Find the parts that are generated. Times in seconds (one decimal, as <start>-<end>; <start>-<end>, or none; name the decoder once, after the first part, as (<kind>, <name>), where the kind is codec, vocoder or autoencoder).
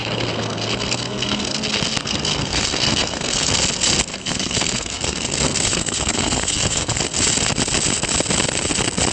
0.0-1.6 (codec, SNAC); 2.0-3.5; 4.1-7.0